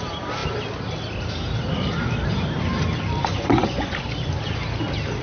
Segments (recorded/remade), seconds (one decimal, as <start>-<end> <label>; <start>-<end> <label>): 0.0-3.3 recorded; 3.3-3.9 remade; 3.9-5.2 recorded